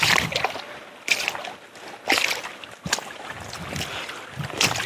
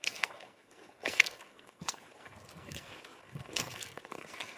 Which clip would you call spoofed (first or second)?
second